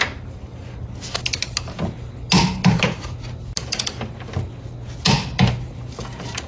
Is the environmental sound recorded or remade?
recorded